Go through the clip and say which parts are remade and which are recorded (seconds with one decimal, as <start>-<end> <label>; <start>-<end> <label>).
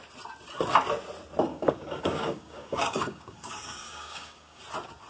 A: 0.0-1.5 recorded; 1.5-4.6 remade; 4.6-5.1 recorded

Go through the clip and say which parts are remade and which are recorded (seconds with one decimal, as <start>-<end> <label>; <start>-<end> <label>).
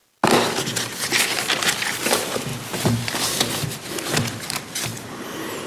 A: 0.0-5.7 recorded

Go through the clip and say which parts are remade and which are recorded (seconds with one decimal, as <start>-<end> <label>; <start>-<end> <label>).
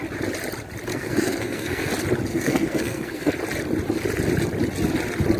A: 0.0-0.9 recorded; 0.9-1.9 remade; 1.9-2.3 recorded; 2.3-3.3 remade; 3.3-5.4 recorded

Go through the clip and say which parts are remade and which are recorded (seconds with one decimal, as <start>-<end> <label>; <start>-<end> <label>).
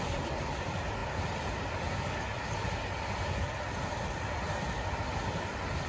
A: 0.0-1.0 recorded; 1.0-1.9 remade; 1.9-5.9 recorded